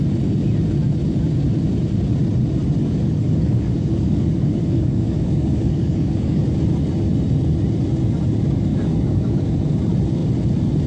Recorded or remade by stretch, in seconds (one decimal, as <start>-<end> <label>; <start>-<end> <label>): 0.0-2.8 recorded; 2.8-6.4 remade; 6.4-8.7 recorded; 8.7-9.5 remade; 9.5-10.9 recorded